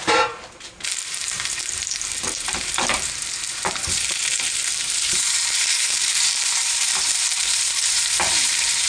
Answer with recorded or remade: remade